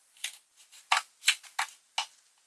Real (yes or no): yes